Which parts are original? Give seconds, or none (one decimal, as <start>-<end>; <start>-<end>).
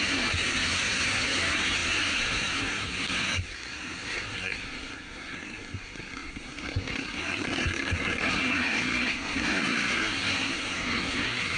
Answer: none